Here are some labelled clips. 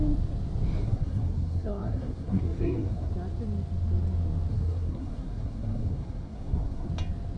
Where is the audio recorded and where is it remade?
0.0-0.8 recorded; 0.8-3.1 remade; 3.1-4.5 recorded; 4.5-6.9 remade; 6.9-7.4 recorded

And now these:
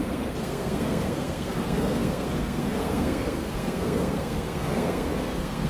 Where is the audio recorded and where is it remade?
0.0-5.7 remade